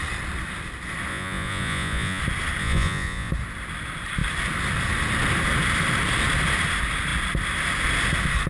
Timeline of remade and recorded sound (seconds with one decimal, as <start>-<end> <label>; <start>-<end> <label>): 0.0-1.1 recorded; 1.1-2.2 remade; 2.2-2.6 recorded; 2.6-3.3 remade; 3.3-8.5 recorded